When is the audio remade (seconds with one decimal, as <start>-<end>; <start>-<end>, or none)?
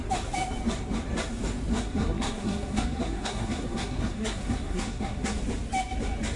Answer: 1.7-5.4